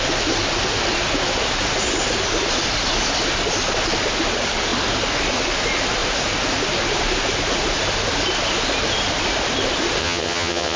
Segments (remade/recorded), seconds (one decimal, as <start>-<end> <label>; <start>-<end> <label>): 0.0-10.0 recorded; 10.0-10.8 remade